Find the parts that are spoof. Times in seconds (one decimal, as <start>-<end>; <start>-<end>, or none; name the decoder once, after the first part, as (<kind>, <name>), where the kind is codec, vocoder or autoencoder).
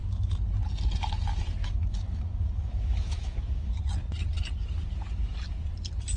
1.6-3.7 (autoencoder, DAC-VAE)